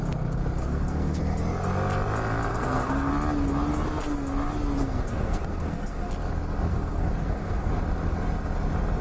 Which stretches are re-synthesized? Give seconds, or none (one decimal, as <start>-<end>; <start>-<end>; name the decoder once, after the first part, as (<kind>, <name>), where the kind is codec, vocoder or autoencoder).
0.6-1.2 (codec, SNAC); 2.5-3.1; 4.8-6.1; 6.7-7.7